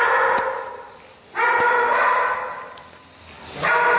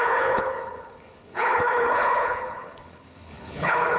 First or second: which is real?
first